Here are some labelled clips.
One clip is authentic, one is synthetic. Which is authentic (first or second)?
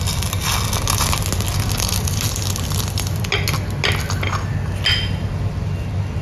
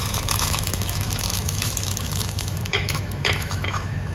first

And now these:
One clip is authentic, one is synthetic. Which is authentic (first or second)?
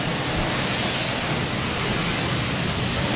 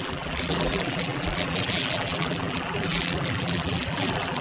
first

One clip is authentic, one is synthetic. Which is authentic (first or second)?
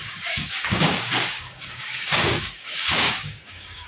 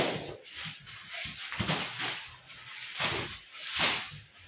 second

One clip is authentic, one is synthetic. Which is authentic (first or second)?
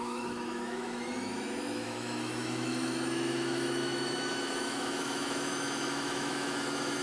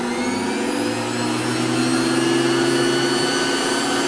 second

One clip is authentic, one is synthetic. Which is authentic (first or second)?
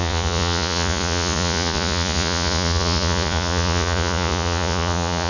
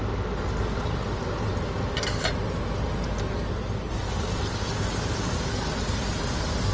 second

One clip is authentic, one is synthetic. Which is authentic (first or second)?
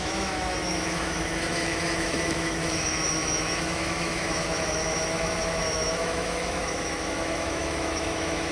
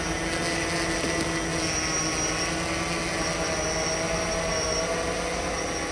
second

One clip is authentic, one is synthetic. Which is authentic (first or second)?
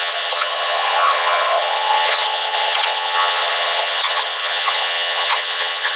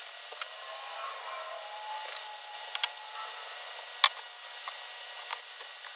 second